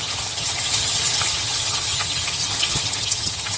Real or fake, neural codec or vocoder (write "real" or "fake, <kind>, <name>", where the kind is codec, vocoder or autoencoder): fake, vocoder, HiFi-GAN